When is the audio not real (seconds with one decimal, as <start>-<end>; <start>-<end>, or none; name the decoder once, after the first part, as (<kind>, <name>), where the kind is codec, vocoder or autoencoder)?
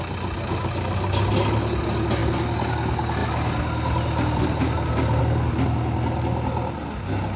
none